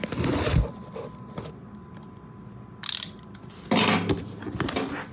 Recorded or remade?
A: recorded